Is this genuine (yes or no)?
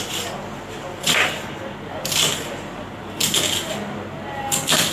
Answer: yes